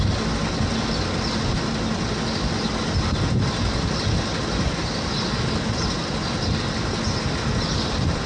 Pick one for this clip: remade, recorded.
recorded